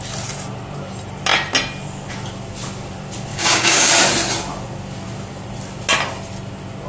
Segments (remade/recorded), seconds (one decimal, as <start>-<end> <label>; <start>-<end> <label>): 0.0-3.3 recorded; 3.3-3.9 remade; 3.9-6.9 recorded